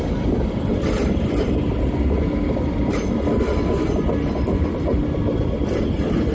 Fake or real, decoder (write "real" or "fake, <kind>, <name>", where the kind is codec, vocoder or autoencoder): real